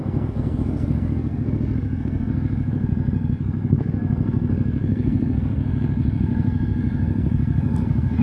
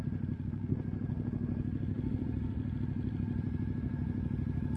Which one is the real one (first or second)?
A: second